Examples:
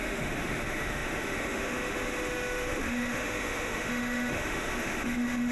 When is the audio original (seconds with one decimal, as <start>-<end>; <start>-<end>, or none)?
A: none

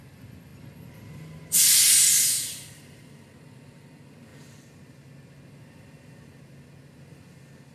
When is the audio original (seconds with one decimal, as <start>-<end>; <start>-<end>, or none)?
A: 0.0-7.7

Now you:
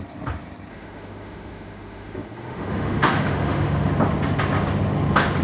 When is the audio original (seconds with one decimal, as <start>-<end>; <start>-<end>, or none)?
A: 0.0-0.7; 3.9-5.4